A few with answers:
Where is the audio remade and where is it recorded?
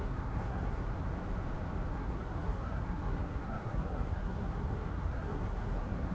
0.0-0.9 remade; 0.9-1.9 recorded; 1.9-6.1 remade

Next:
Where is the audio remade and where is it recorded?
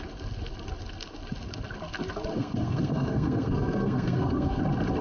0.0-2.3 recorded; 2.3-4.6 remade; 4.6-5.0 recorded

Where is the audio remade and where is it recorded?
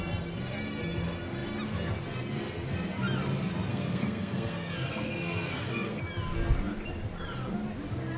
0.0-3.7 recorded; 3.7-6.0 remade; 6.0-8.2 recorded